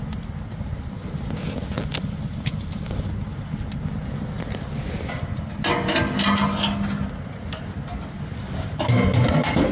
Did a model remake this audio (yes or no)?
no